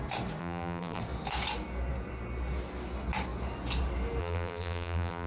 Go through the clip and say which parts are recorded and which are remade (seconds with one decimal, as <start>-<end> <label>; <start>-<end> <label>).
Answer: 0.0-0.4 recorded; 0.4-1.0 remade; 1.0-4.2 recorded; 4.2-5.3 remade